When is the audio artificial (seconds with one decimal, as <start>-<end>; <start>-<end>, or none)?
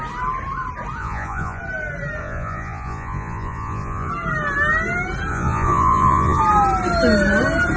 1.0-1.6; 2.2-4.1; 5.3-6.4